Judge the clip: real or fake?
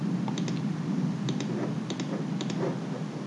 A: real